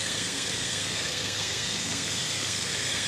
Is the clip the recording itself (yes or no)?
no